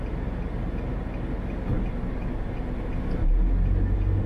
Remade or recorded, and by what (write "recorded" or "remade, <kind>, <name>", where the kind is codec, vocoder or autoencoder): recorded